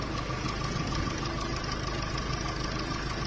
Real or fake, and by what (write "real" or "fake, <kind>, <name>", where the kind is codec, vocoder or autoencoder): real